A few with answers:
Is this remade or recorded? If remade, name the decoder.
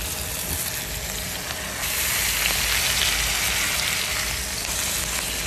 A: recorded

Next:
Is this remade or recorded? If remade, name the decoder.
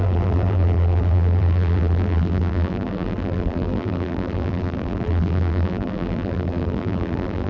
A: remade, vocoder, BigVGAN v2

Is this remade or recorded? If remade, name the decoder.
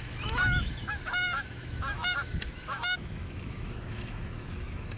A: remade, autoencoder, DAC-VAE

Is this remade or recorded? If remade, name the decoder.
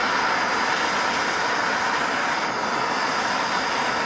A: recorded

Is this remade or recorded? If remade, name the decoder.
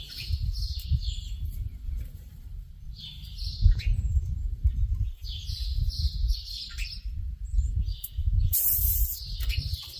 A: remade, vocoder, BigVGAN v2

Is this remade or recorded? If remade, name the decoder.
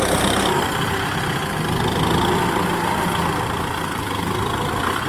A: recorded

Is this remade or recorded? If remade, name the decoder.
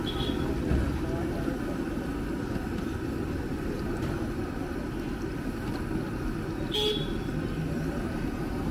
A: recorded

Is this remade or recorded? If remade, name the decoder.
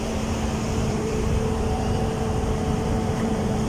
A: remade, vocoder, BigVGAN v2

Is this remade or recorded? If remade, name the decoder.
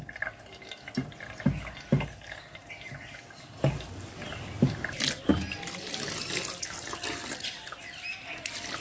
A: recorded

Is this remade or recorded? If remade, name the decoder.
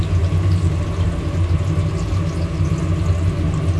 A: recorded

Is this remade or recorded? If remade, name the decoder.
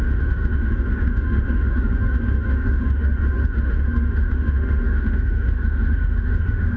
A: remade, autoencoder, DAC-VAE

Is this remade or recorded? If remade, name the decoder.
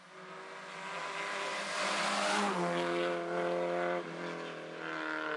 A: recorded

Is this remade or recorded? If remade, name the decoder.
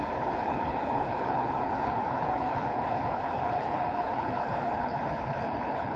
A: remade, codec, HILCodec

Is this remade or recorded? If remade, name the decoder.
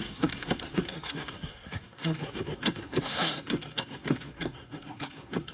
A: remade, codec, SNAC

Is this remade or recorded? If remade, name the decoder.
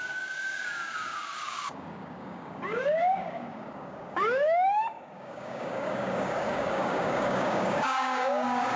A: remade, codec, DAC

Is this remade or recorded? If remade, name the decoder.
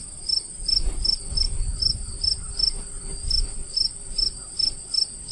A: recorded